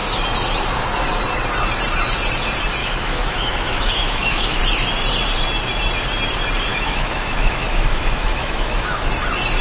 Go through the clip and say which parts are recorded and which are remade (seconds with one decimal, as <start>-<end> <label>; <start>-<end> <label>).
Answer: 0.0-2.8 recorded; 2.8-4.6 remade; 4.6-6.7 recorded; 6.7-9.1 remade; 9.1-9.6 recorded